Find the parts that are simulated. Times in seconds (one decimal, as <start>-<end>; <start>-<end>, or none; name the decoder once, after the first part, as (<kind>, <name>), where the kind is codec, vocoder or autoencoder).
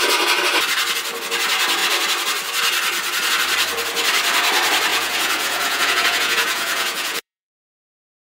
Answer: 4.9-7.5 (vocoder, Vocos)